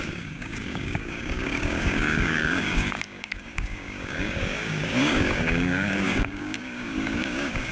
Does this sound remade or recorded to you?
remade